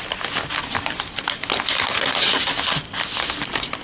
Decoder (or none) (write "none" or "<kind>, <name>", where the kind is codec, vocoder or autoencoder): none